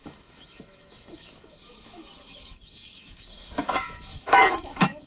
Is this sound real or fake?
fake